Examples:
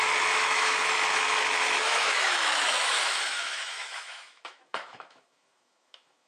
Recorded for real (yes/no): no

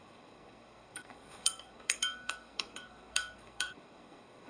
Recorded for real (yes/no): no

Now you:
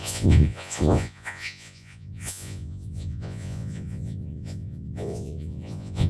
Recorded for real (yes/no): no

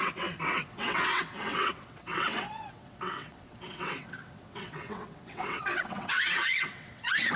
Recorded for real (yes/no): no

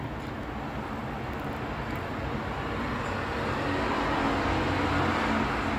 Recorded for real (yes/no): yes